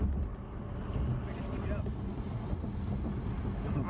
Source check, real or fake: real